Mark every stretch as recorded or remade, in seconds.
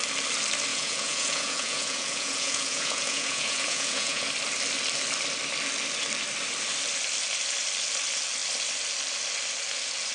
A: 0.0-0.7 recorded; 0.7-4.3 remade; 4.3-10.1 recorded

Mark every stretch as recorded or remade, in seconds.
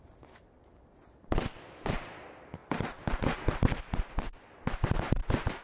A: 0.0-5.6 recorded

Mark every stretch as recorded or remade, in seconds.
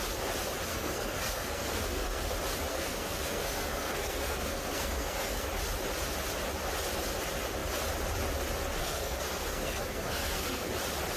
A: 0.0-0.7 recorded; 0.7-2.2 remade; 2.2-2.7 recorded; 2.7-5.5 remade; 5.5-8.8 recorded; 8.8-10.7 remade; 10.7-11.2 recorded